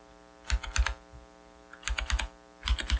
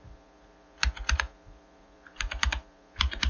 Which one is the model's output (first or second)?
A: second